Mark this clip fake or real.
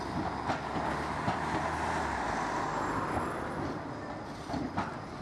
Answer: real